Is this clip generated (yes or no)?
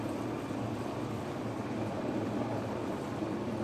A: no